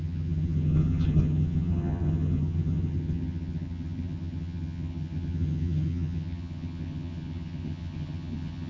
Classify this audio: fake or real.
fake